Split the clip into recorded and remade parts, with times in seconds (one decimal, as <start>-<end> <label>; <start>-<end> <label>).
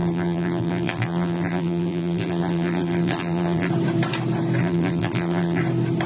0.0-3.7 remade; 3.7-4.6 recorded; 4.6-5.6 remade; 5.6-6.1 recorded